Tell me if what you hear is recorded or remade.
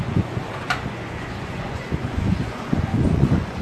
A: remade